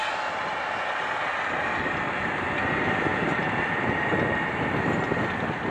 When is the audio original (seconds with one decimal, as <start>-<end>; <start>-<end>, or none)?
0.0-5.7